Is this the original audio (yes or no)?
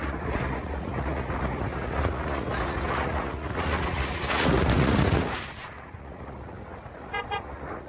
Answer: no